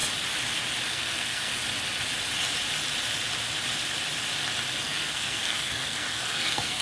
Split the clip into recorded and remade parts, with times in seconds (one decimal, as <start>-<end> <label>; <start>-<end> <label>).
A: 0.0-0.9 recorded; 0.9-1.5 remade; 1.5-4.8 recorded; 4.8-6.8 remade

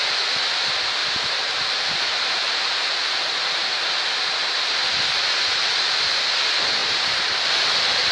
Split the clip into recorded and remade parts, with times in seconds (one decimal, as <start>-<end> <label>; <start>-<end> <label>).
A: 0.0-1.0 recorded; 1.0-1.6 remade; 1.6-2.1 recorded; 2.1-2.7 remade; 2.7-6.8 recorded; 6.8-7.3 remade; 7.3-8.1 recorded

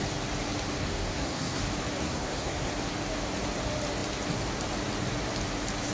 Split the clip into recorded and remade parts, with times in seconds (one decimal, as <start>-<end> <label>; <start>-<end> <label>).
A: 0.0-0.8 recorded; 0.8-1.6 remade; 1.6-2.0 recorded; 2.0-2.7 remade; 2.7-5.9 recorded

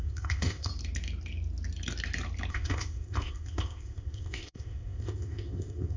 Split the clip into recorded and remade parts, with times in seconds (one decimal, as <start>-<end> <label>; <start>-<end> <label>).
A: 0.0-0.7 remade; 0.7-2.5 recorded; 2.5-6.0 remade

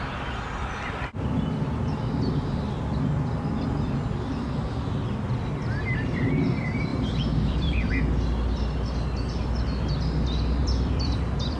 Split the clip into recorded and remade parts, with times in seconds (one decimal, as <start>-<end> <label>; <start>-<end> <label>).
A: 0.0-6.9 recorded; 6.9-7.9 remade; 7.9-10.6 recorded; 10.6-11.6 remade

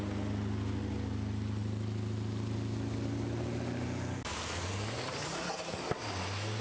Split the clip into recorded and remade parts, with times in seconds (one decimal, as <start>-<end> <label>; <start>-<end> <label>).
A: 0.0-6.6 recorded